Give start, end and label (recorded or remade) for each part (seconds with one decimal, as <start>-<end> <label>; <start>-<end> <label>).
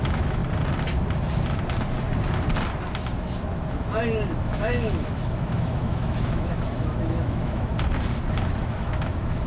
0.0-0.4 remade; 0.4-4.4 recorded; 4.4-7.7 remade; 7.7-8.6 recorded; 8.6-9.5 remade